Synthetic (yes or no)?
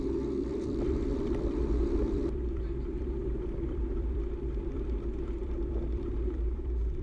yes